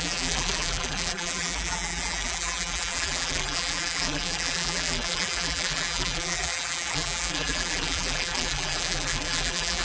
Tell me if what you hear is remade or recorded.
remade